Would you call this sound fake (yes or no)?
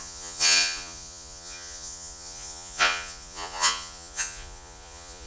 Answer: yes